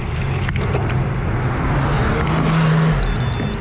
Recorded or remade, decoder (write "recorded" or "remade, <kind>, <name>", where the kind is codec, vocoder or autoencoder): recorded